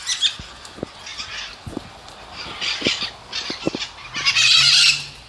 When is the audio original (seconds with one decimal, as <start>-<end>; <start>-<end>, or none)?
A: 0.0-5.3

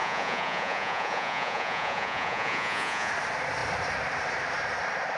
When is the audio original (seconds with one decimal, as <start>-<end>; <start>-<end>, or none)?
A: 3.1-5.2

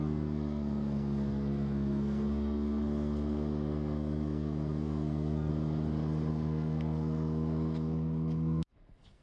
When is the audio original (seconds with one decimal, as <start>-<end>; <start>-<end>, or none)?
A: 5.5-6.3

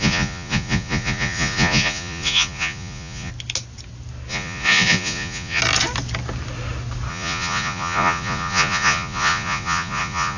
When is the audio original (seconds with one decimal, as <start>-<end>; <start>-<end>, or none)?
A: 3.3-4.3; 5.6-7.1

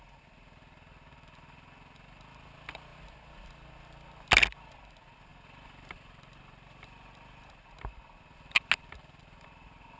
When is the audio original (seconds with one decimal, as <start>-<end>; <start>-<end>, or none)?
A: 0.0-10.0